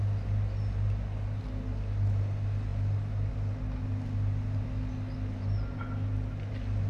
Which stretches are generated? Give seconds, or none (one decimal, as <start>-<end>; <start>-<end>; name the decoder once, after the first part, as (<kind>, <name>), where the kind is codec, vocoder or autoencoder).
none